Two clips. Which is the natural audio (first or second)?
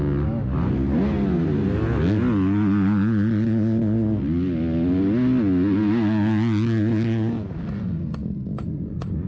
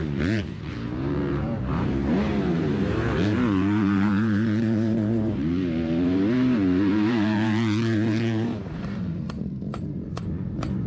first